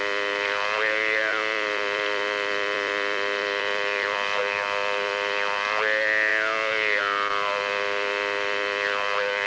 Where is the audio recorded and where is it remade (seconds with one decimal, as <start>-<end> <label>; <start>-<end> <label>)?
0.0-1.3 recorded; 1.3-4.4 remade; 4.4-9.5 recorded